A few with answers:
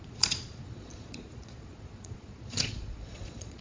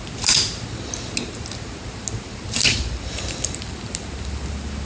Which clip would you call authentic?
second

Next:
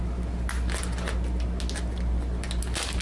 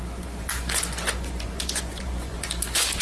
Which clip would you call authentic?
first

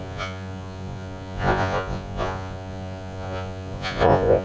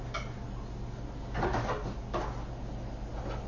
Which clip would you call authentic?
second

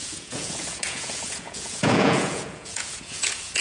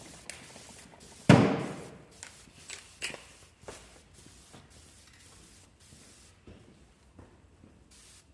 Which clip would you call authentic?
second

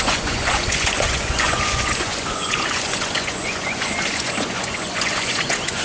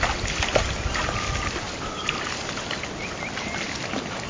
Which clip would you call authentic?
second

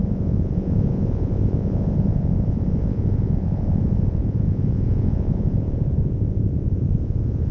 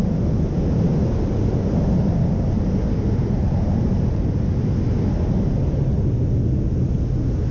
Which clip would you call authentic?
second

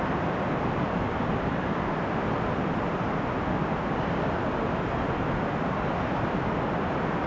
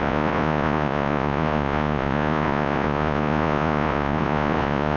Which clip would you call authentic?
first